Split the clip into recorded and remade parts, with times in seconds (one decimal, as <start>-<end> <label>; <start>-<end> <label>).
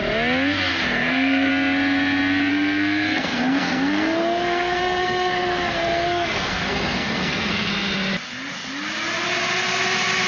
0.0-0.7 recorded; 0.7-1.5 remade; 1.5-2.5 recorded; 2.5-7.7 remade; 7.7-10.3 recorded